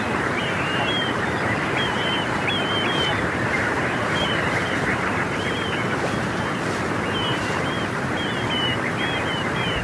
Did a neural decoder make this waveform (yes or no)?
yes